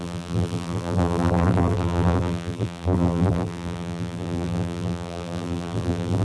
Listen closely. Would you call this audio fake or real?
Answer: fake